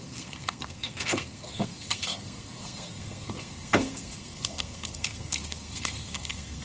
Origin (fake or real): fake